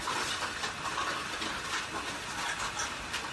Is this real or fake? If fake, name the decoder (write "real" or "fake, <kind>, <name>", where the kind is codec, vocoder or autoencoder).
real